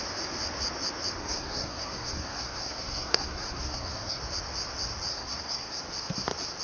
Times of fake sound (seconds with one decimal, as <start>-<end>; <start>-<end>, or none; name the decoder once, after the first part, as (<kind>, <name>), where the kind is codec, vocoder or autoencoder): 1.2-4.2 (codec, SNAC); 5.1-5.8